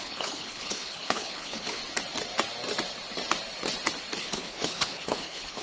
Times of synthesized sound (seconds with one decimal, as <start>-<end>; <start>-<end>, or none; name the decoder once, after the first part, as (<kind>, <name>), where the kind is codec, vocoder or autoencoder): 0.0-1.8 (codec, HILCodec); 4.2-5.6